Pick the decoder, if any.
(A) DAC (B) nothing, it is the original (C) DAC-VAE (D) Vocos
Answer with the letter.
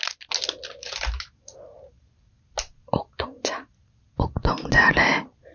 B